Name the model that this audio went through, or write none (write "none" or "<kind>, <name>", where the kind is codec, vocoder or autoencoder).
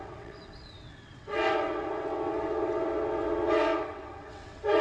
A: vocoder, WaveNeXt